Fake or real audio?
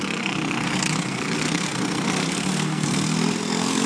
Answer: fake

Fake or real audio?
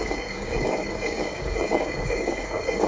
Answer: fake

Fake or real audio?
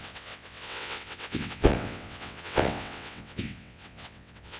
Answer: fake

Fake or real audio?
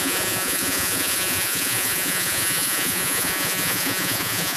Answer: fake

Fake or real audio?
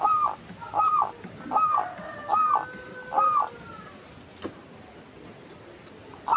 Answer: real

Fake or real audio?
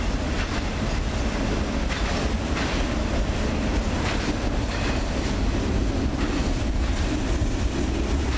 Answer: real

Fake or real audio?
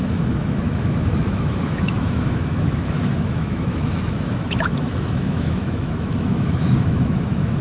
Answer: fake